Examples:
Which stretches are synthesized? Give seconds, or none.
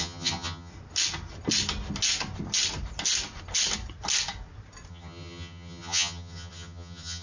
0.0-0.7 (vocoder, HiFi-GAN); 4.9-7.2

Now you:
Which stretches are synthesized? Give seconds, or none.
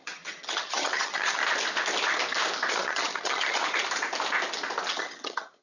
0.0-1.4 (vocoder, HiFi-GAN); 2.7-3.6; 4.9-5.6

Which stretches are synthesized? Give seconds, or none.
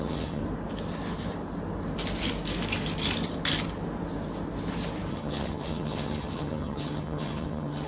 0.0-0.4 (vocoder, HiFi-GAN); 5.1-7.9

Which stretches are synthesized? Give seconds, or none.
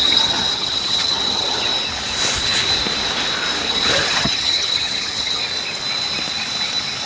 0.0-1.7 (vocoder, HiFi-GAN); 3.7-5.4